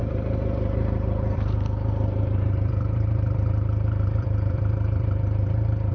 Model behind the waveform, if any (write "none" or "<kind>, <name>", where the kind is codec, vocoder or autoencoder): vocoder, BigVGAN v2